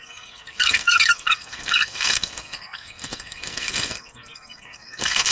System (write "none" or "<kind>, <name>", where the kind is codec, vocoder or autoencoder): codec, SNAC